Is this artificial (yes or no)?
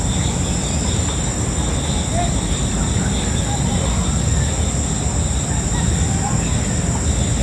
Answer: no